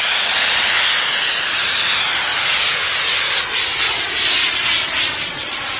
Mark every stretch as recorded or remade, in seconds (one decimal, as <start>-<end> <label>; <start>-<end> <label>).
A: 0.0-5.8 recorded